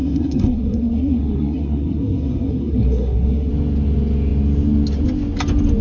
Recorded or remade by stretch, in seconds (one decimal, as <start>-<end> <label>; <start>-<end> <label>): 0.0-3.5 remade; 3.5-5.8 recorded